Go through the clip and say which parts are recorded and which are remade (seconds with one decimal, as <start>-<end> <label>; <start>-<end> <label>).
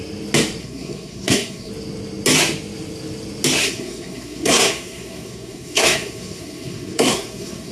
0.0-0.6 recorded; 0.6-1.7 remade; 1.7-3.6 recorded; 3.6-7.7 remade